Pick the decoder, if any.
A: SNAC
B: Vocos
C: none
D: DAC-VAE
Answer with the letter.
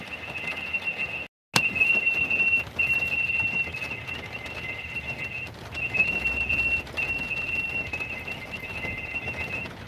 C